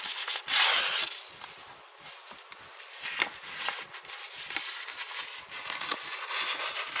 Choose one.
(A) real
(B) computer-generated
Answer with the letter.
A